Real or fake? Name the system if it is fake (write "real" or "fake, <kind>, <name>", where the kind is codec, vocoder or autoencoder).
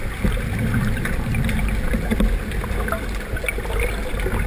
real